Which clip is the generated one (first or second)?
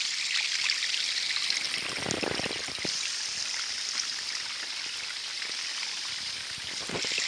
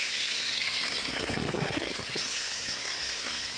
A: second